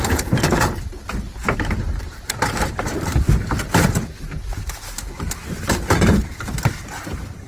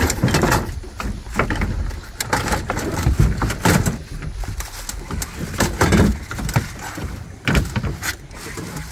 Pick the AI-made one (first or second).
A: first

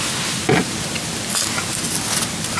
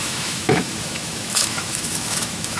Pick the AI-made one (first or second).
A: second